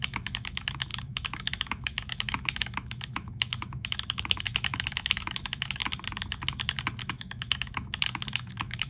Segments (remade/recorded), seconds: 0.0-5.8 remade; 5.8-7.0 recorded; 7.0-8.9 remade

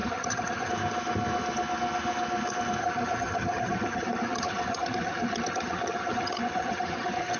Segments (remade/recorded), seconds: 0.0-0.7 remade; 0.7-2.8 recorded; 2.8-7.4 remade